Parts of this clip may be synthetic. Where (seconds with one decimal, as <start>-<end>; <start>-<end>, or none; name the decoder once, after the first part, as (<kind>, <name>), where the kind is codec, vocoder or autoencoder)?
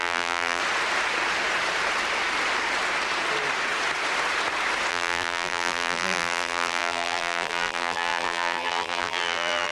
0.0-0.6 (vocoder, BigVGAN v2); 4.9-9.7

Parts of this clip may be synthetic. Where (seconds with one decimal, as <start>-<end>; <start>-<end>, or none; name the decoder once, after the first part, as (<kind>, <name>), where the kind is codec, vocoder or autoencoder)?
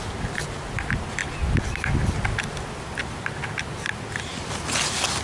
none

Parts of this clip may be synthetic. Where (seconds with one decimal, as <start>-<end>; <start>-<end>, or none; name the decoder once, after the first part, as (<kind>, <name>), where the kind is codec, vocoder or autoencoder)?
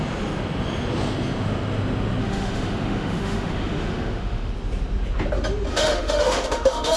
2.2-4.5 (autoencoder, DAC-VAE); 5.7-7.0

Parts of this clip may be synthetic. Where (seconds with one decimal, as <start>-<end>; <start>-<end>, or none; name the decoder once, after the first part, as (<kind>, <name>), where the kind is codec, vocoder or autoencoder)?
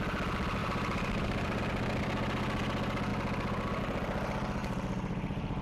0.6-1.6 (vocoder, BigVGAN v2); 4.6-5.6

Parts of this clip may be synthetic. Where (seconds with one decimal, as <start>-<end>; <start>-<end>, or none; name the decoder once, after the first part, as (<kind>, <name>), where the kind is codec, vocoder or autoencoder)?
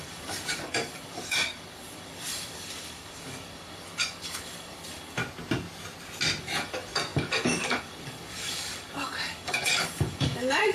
0.0-5.2 (codec, DAC); 6.4-10.7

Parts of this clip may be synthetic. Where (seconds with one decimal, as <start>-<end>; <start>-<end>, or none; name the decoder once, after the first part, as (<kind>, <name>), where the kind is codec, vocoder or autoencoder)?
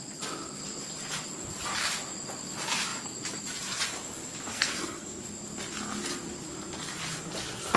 4.5-5.2 (codec, SNAC)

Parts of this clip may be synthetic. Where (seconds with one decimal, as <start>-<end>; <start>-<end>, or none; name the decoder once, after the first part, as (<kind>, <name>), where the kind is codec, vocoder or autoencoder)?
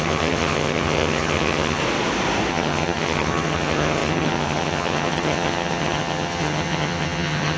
0.0-1.8 (vocoder, HiFi-GAN); 2.5-7.6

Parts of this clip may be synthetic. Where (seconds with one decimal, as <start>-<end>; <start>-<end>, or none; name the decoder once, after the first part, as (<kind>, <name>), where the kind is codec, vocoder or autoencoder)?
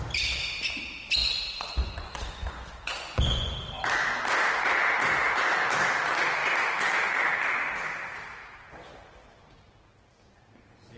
1.2-3.5 (vocoder, Vocos)